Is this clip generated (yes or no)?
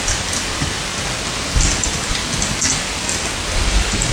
no